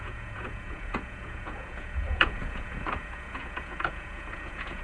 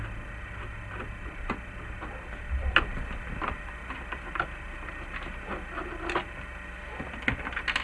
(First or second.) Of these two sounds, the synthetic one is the first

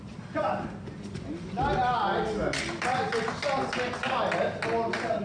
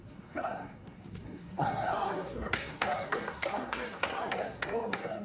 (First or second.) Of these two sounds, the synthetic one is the second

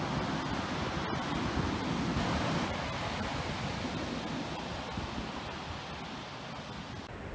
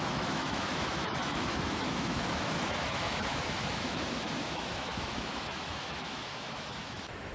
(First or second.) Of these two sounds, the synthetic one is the second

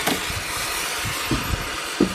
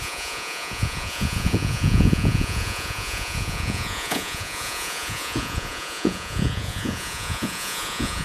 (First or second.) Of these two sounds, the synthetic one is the second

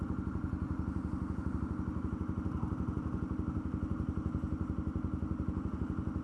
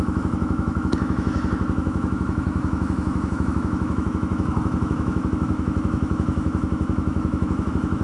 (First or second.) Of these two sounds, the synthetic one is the second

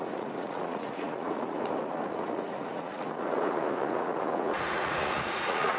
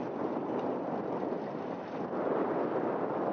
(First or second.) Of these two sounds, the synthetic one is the first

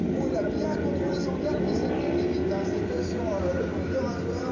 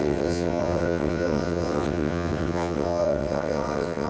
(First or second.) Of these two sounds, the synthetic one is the second